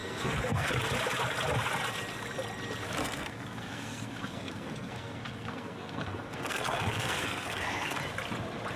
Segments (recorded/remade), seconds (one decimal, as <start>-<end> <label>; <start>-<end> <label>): 0.0-0.7 remade; 0.7-3.0 recorded; 3.0-8.0 remade; 8.0-8.8 recorded